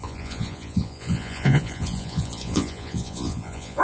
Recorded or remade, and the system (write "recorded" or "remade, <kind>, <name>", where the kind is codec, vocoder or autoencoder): remade, vocoder, Vocos